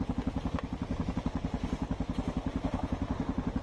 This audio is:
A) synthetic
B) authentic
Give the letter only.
B